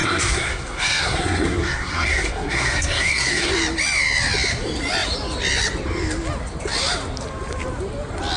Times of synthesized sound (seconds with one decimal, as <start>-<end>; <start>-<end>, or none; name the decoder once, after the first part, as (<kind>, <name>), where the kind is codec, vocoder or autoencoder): 0.0-3.5 (codec, SNAC)